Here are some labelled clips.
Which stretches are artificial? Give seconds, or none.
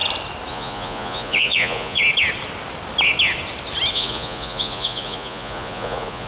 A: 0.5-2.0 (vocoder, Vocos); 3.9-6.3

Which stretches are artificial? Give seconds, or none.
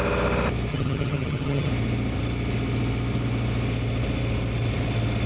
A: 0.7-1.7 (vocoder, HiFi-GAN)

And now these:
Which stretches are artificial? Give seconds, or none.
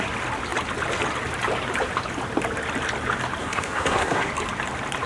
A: 3.4-4.3 (codec, SNAC)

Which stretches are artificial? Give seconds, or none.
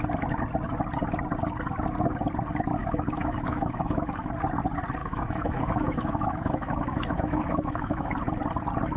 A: 2.8-4.3 (autoencoder, DAC-VAE); 5.0-8.1